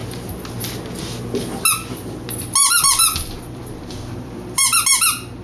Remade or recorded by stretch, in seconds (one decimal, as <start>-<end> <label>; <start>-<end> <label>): 0.0-2.7 recorded; 2.7-5.4 remade